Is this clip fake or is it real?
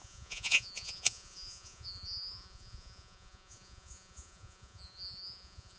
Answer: fake